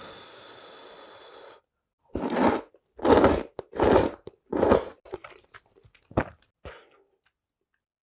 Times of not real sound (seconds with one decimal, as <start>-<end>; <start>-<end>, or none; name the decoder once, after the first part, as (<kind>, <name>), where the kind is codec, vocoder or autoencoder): 4.5-5.6 (vocoder, BigVGAN v2)